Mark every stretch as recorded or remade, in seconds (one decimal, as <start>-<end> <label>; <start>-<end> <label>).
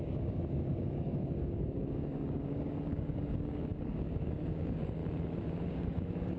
0.0-5.0 remade; 5.0-5.7 recorded; 5.7-6.4 remade